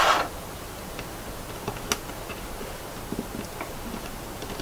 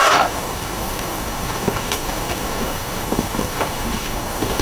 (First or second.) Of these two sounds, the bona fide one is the first